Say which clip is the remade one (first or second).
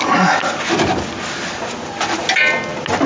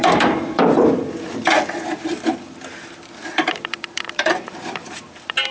second